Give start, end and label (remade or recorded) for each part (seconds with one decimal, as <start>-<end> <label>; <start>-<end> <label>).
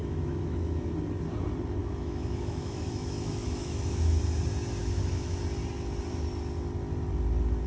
0.0-0.9 remade; 0.9-1.8 recorded; 1.8-4.2 remade; 4.2-4.8 recorded; 4.8-5.4 remade; 5.4-7.7 recorded